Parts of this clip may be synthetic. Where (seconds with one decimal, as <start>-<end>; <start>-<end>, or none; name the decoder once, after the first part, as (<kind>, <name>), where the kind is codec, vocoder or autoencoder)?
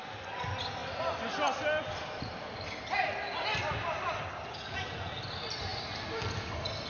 none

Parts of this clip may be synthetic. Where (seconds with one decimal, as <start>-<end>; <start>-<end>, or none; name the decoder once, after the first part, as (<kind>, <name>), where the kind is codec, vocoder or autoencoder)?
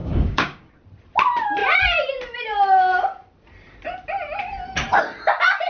0.0-0.7 (codec, DAC)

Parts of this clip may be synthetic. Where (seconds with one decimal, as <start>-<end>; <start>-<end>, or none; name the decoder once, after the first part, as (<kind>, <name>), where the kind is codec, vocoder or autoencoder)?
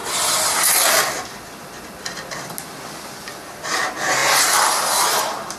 none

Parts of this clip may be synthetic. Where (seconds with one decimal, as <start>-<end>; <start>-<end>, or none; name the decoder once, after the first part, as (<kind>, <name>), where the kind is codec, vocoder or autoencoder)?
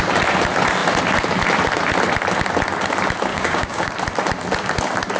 3.3-3.9 (codec, DAC)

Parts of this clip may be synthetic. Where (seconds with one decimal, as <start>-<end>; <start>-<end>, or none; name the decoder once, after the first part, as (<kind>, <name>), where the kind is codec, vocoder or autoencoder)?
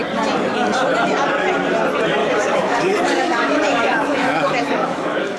2.2-5.4 (codec, DAC)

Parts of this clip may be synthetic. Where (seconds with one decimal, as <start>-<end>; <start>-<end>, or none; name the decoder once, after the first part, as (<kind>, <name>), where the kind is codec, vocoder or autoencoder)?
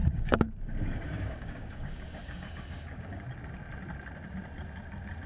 0.0-3.2 (codec, DAC)